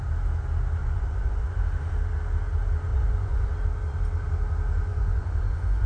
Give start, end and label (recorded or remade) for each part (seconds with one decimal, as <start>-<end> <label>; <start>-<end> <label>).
0.0-0.8 recorded; 0.8-1.6 remade; 1.6-2.9 recorded; 2.9-3.5 remade; 3.5-4.9 recorded; 4.9-5.9 remade